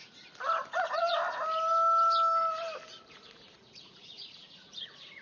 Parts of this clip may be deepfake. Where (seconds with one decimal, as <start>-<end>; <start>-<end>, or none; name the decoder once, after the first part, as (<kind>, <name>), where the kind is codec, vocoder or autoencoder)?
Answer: 3.1-5.2 (vocoder, Vocos)